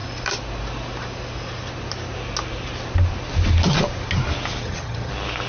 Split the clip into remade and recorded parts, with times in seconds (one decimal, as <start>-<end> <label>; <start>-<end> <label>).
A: 0.0-4.6 recorded; 4.6-5.1 remade; 5.1-5.5 recorded